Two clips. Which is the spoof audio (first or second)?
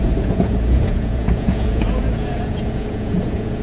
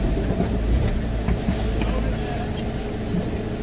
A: first